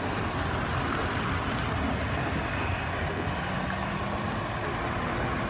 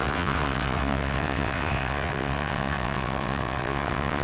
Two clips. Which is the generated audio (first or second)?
second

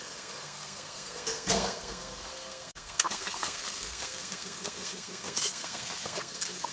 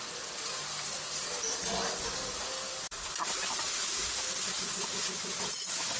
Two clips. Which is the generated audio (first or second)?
first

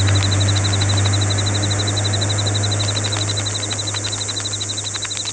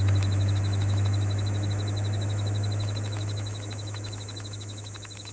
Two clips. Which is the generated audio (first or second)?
second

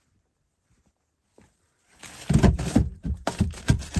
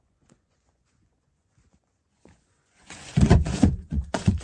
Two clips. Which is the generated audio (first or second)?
second